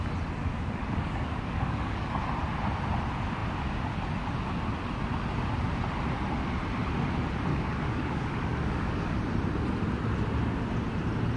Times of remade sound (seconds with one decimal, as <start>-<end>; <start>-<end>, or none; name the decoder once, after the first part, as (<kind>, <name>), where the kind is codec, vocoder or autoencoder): 0.4-2.2 (codec, DAC); 7.5-9.2